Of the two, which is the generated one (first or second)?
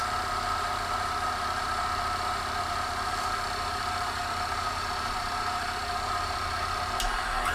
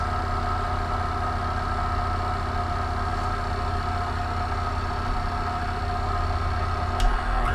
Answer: first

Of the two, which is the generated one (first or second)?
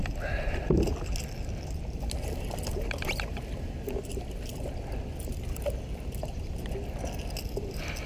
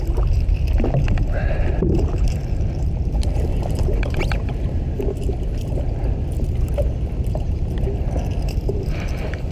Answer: second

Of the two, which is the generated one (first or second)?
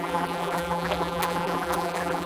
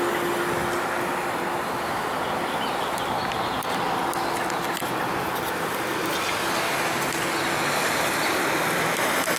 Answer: first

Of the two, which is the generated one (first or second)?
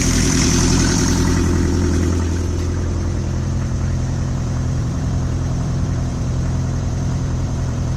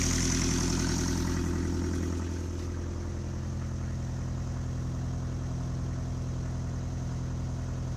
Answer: first